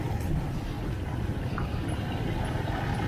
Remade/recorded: recorded